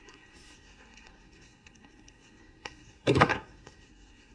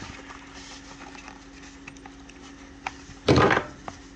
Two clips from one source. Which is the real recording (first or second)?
second